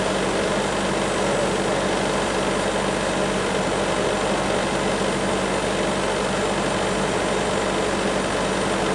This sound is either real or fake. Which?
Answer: real